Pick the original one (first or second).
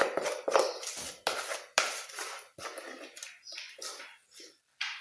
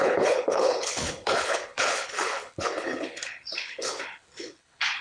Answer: first